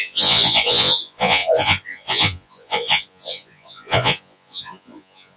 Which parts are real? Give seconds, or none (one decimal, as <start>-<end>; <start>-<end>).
none